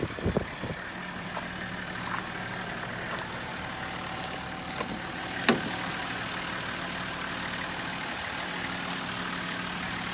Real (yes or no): yes